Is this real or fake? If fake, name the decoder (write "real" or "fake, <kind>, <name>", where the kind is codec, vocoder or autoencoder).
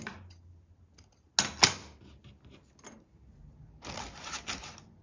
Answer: real